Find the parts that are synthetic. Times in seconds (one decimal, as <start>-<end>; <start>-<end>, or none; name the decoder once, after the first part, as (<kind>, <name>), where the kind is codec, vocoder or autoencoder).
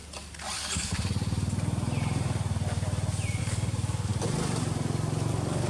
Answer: 3.4-4.1 (codec, DAC); 5.3-5.7